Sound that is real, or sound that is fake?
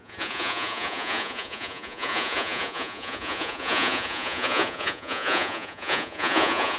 fake